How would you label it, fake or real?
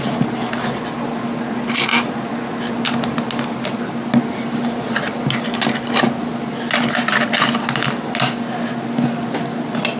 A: real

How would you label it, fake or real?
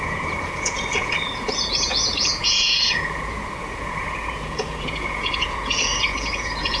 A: fake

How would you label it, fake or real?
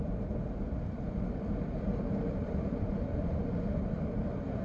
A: fake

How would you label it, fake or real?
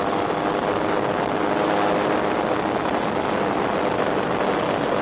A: real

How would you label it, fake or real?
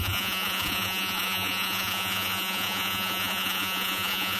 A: fake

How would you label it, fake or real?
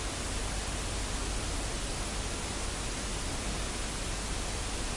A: real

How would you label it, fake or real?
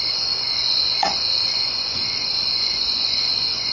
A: fake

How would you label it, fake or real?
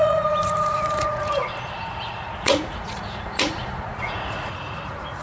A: fake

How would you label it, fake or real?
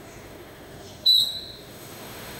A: fake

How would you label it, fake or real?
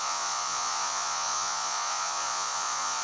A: fake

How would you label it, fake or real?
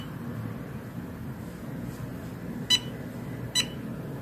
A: real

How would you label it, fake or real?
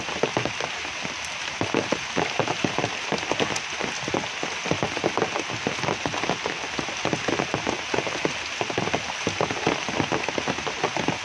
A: real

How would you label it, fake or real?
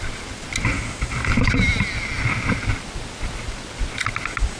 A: real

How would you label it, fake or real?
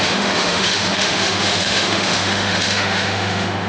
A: fake